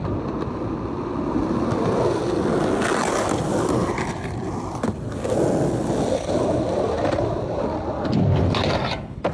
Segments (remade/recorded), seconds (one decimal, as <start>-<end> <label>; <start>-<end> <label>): 0.0-9.3 recorded